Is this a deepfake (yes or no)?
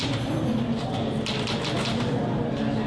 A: no